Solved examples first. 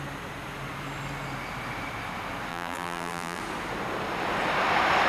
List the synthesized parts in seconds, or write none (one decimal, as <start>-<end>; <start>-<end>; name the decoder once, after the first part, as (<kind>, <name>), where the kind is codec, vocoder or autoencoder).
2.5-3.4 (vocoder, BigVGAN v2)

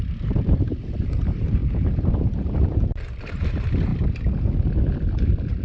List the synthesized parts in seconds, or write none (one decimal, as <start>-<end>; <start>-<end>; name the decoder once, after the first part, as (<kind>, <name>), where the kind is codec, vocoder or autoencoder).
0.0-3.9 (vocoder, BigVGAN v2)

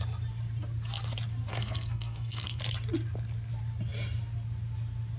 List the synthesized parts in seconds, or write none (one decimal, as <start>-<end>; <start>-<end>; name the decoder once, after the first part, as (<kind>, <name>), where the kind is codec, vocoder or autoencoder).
1.5-2.6 (codec, SNAC)

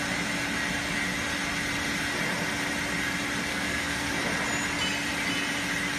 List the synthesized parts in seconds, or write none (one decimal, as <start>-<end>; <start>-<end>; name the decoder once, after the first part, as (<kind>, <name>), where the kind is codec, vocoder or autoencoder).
3.5-4.1 (codec, SNAC)

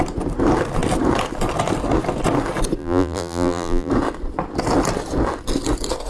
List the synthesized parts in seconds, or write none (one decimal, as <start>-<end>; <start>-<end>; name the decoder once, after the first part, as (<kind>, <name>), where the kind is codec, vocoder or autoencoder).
2.8-3.9 (vocoder, BigVGAN v2)

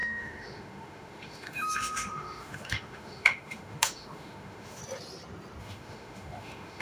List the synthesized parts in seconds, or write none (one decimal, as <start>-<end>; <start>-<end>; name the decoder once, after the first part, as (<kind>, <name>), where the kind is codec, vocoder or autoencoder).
0.0-4.8 (autoencoder, DAC-VAE); 5.6-6.8